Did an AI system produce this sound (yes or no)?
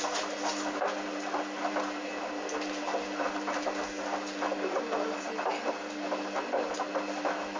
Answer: no